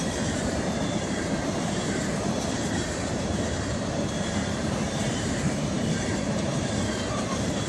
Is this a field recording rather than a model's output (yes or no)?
no